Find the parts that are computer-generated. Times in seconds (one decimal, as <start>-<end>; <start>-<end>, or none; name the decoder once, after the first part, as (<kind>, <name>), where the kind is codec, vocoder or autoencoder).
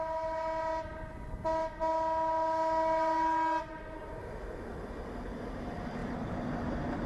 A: none